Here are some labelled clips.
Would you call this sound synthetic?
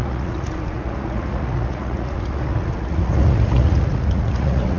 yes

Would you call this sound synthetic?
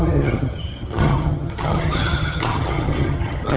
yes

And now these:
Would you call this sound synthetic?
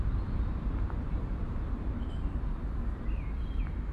yes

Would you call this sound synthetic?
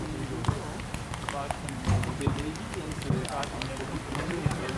no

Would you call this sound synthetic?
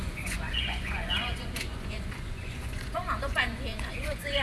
yes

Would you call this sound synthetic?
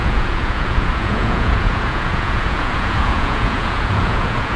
yes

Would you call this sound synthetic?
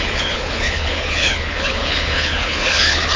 yes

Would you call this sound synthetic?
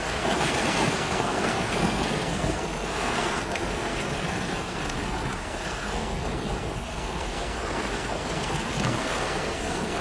yes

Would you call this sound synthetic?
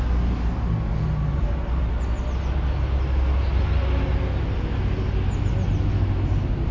no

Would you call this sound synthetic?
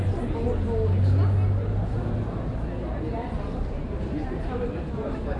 no